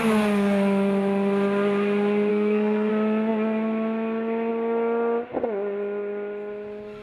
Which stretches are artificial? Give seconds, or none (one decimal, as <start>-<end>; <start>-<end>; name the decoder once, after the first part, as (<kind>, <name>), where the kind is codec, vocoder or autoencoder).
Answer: 2.3-2.9 (codec, SNAC)